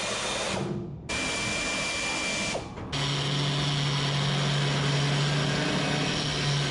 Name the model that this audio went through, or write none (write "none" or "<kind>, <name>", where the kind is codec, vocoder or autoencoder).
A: none